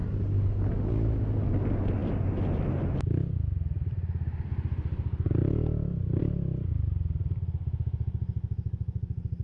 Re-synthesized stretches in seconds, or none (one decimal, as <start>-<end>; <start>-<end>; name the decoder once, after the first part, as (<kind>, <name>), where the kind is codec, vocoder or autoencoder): none